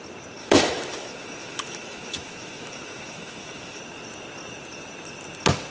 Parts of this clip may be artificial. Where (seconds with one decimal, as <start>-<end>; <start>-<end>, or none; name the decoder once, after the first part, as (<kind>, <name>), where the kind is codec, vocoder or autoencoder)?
0.4-3.8 (autoencoder, DAC-VAE)